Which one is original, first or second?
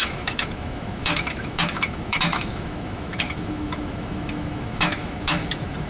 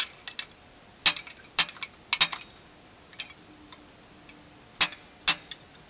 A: second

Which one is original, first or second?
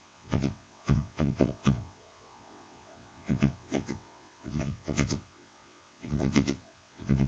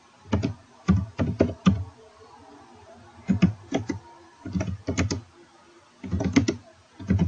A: second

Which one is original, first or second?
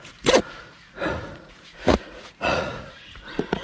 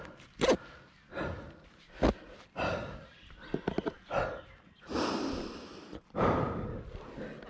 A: second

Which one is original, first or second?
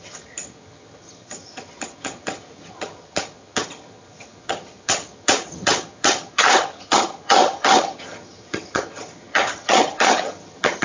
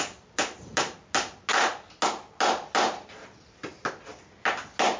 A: second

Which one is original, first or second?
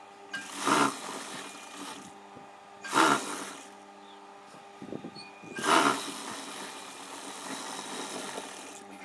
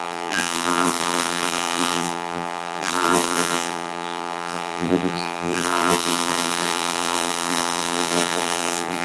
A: first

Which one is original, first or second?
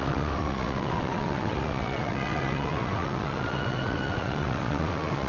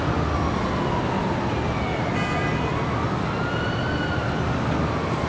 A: second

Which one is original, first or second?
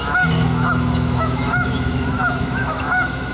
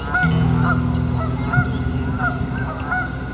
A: second